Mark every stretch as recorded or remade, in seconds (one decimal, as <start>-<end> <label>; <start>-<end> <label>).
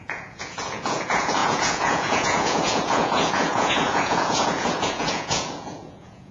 0.0-6.3 remade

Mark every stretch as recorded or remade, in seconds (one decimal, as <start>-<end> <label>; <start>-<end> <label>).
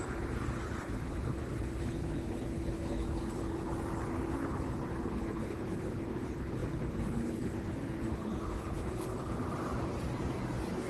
0.0-3.7 remade; 3.7-4.3 recorded; 4.3-9.4 remade; 9.4-10.9 recorded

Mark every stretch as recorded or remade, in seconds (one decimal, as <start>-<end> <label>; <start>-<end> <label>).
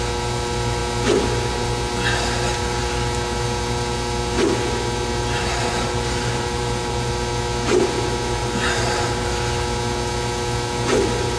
0.0-5.4 recorded; 5.4-7.1 remade; 7.1-8.4 recorded; 8.4-9.3 remade; 9.3-11.4 recorded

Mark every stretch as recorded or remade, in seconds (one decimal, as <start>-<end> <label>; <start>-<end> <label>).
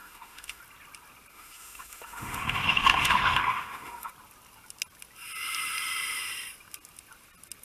0.0-0.6 remade; 0.6-1.3 recorded; 1.3-4.1 remade; 4.1-7.6 recorded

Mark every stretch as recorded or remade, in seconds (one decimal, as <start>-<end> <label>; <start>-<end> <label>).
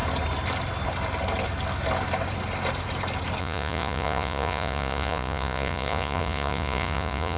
0.0-3.4 recorded; 3.4-7.4 remade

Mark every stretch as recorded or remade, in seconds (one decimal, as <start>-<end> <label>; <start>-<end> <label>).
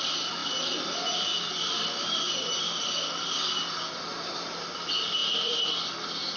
0.0-6.4 recorded